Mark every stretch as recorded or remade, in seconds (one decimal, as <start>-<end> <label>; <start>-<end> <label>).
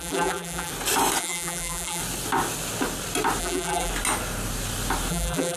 0.0-0.7 remade; 0.7-1.2 recorded; 1.2-2.0 remade; 2.0-3.4 recorded; 3.4-3.9 remade; 3.9-5.1 recorded; 5.1-5.6 remade